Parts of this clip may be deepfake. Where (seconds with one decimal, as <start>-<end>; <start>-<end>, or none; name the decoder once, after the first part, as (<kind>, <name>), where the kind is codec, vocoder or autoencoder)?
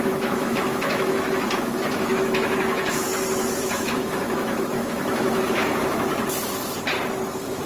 0.0-3.1 (autoencoder, DAC-VAE); 3.6-6.1; 7.3-7.7